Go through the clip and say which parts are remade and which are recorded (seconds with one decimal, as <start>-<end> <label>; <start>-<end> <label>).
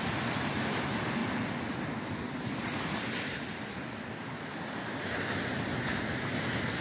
0.0-6.8 recorded